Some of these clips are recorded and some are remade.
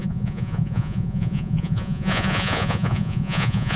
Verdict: remade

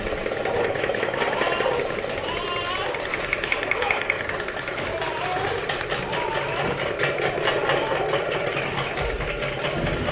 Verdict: recorded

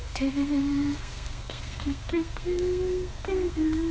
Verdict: remade